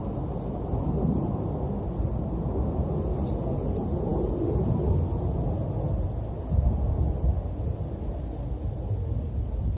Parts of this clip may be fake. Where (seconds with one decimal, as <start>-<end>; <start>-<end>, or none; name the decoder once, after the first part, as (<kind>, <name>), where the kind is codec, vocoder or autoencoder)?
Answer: none